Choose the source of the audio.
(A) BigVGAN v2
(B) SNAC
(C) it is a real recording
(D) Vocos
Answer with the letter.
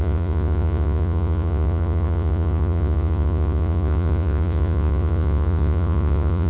D